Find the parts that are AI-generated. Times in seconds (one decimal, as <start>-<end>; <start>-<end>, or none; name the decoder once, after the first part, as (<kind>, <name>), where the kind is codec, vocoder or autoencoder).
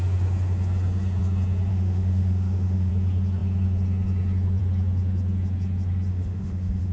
1.7-2.9 (autoencoder, DAC-VAE); 6.1-6.9